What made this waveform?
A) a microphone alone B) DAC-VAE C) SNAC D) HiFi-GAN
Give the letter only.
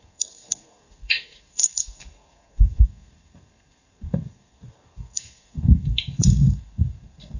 C